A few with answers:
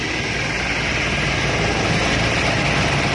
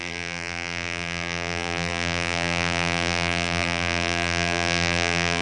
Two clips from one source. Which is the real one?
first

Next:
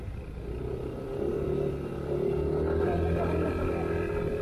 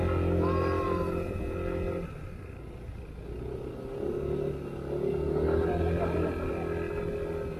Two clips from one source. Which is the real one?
second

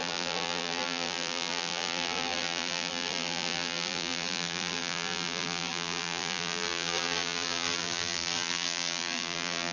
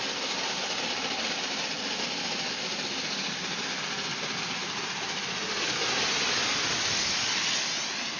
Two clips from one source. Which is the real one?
second